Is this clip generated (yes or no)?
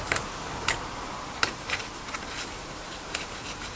yes